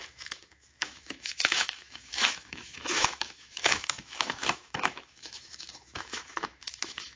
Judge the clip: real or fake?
fake